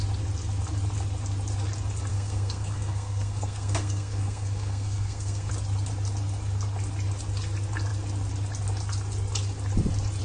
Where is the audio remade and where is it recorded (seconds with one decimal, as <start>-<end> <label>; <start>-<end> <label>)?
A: 0.0-2.1 recorded; 2.1-5.5 remade; 5.5-10.2 recorded